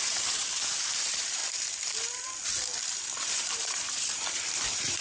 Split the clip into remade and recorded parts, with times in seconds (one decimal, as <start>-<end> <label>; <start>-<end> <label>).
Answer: 0.0-1.4 remade; 1.4-2.8 recorded; 2.8-5.0 remade